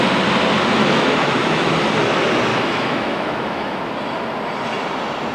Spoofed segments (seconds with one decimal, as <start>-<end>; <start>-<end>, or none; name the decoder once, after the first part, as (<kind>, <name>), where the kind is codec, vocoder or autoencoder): 0.8-1.7 (autoencoder, DAC-VAE); 2.5-3.8